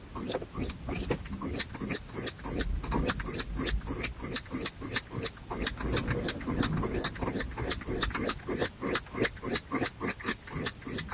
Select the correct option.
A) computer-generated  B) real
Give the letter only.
B